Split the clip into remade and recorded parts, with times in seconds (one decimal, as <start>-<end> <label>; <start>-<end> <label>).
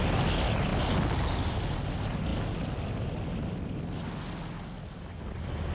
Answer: 0.0-5.7 recorded